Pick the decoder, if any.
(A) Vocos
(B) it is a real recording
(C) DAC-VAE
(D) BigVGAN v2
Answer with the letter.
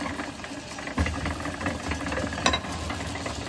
B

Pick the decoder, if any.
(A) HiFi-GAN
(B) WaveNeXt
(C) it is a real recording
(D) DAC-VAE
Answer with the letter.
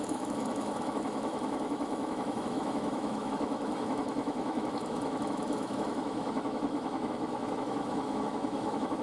D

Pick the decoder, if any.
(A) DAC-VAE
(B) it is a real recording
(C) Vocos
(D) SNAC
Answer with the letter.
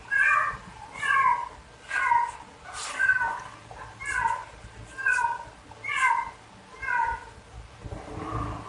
B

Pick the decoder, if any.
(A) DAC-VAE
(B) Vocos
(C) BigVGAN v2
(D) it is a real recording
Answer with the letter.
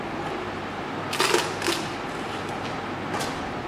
D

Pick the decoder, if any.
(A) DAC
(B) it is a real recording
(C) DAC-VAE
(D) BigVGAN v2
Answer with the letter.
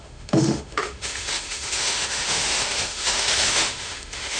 C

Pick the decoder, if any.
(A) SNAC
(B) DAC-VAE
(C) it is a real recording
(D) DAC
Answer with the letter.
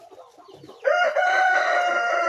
C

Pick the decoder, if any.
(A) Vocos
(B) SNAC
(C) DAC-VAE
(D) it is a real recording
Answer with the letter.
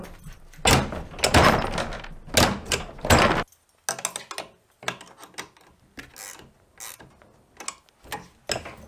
D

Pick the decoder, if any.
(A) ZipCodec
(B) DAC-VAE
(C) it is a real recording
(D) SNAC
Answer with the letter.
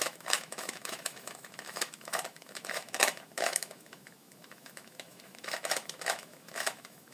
B